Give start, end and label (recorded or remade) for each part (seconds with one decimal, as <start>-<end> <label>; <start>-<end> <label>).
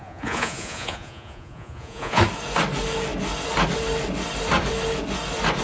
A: 0.0-2.2 remade; 2.2-5.6 recorded